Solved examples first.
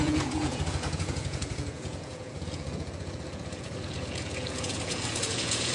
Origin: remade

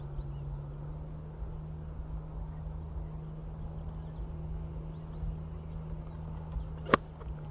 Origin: recorded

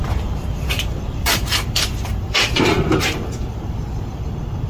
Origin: remade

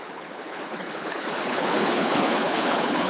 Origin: remade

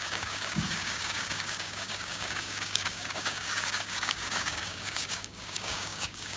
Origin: remade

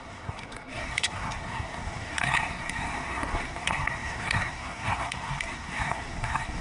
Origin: remade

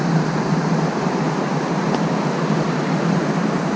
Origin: recorded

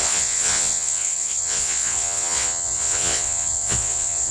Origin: remade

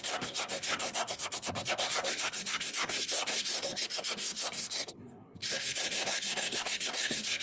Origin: remade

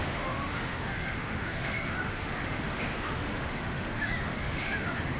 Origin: remade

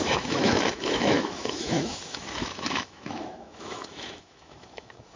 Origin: remade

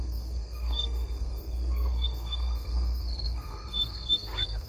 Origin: remade